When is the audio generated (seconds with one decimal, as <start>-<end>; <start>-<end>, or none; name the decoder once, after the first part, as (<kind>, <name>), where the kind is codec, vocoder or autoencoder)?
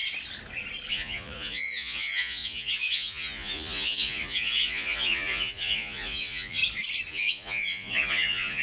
0.9-6.6 (vocoder, Vocos); 7.1-8.6